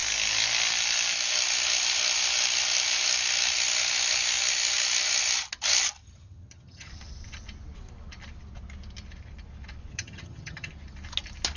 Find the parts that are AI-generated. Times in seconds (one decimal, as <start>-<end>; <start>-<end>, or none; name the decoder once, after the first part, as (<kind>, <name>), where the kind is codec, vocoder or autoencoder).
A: 6.0-6.9 (vocoder, HiFi-GAN); 9.9-10.7